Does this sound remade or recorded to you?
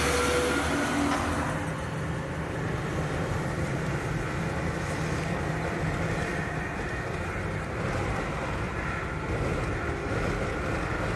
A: recorded